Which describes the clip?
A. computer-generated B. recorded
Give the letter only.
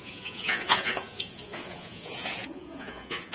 A